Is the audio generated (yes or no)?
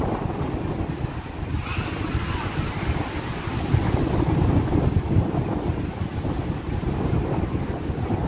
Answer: no